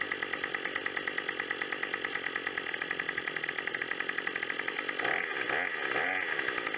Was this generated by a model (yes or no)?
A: no